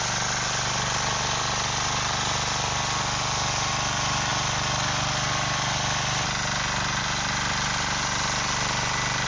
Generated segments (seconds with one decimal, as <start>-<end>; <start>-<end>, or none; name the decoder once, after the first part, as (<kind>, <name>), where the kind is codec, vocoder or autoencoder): none